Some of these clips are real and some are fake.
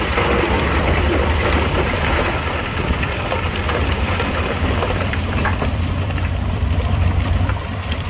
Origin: fake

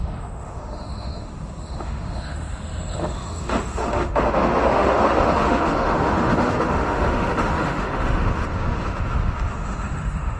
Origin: fake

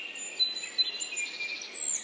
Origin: real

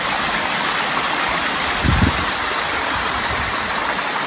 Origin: real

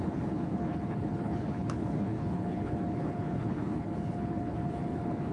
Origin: fake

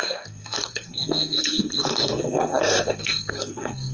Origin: fake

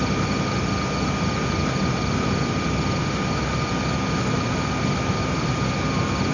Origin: real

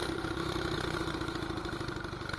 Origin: fake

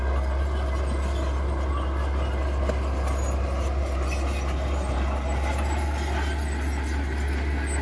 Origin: real